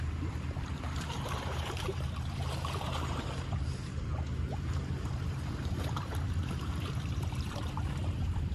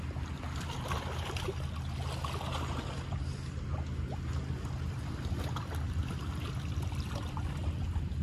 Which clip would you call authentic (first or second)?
second